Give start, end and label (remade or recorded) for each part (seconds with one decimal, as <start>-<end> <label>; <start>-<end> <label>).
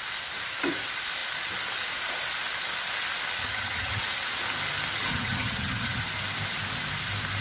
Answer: 0.0-3.4 recorded; 3.4-4.0 remade; 4.0-5.1 recorded; 5.1-6.0 remade; 6.0-7.4 recorded